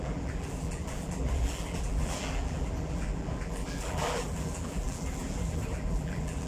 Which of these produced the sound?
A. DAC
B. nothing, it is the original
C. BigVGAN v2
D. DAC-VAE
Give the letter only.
C